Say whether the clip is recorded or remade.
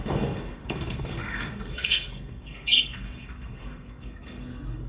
remade